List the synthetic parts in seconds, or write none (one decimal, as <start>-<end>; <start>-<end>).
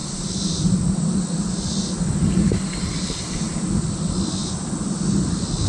none